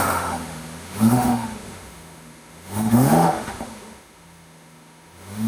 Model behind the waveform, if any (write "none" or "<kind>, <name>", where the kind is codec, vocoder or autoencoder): autoencoder, DAC-VAE